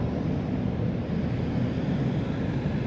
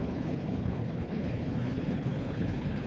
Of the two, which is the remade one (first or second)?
second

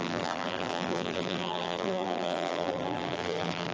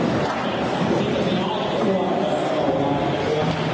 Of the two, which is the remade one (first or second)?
first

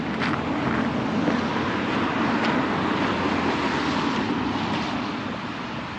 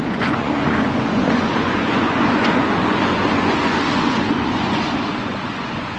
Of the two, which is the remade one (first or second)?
second